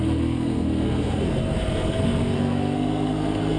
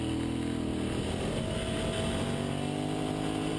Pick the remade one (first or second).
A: first